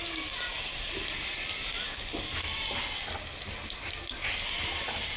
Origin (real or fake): real